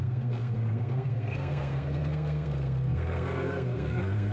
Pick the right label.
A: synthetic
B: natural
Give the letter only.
A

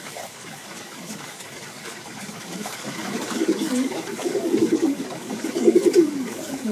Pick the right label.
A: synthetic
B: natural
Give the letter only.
A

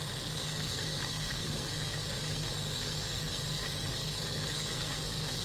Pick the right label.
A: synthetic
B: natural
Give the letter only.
A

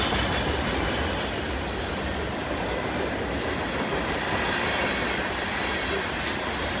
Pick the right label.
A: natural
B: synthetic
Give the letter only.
A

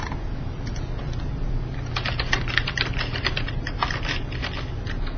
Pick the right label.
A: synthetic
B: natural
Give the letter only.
A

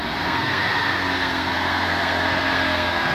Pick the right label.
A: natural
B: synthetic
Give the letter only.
B